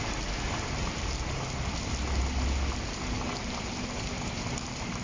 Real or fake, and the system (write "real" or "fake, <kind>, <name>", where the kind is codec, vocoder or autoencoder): real